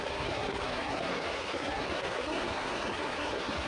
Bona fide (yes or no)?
no